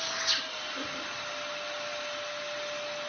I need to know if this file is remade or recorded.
recorded